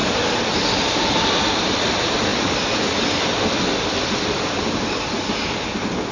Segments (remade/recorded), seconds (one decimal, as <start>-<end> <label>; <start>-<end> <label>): 0.0-6.1 recorded